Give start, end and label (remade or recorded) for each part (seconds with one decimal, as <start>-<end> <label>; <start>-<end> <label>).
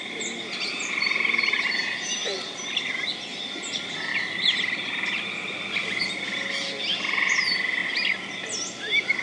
0.0-3.3 recorded; 3.3-4.1 remade; 4.1-9.2 recorded